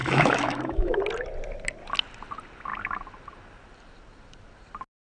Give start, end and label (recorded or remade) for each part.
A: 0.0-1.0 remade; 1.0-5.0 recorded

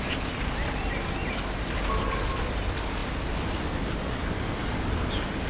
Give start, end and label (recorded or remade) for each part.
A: 0.0-5.5 recorded

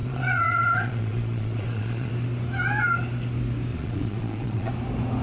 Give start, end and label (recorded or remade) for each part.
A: 0.0-2.1 remade; 2.1-3.7 recorded; 3.7-4.7 remade; 4.7-5.2 recorded

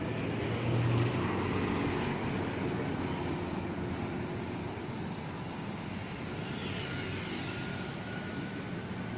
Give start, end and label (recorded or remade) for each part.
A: 0.0-7.7 recorded; 7.7-8.6 remade; 8.6-9.2 recorded

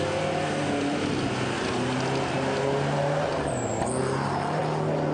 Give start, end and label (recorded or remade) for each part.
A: 0.0-3.3 recorded; 3.3-4.6 remade; 4.6-5.1 recorded

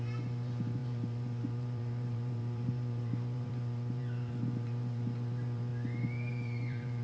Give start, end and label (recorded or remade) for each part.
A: 0.0-5.7 remade; 5.7-6.3 recorded; 6.3-7.0 remade